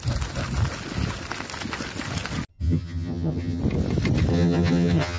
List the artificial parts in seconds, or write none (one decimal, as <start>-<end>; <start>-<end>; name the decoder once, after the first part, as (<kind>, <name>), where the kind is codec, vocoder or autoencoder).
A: 2.5-3.6 (vocoder, HiFi-GAN); 4.3-5.2